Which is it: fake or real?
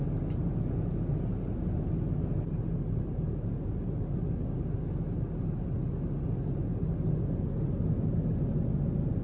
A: real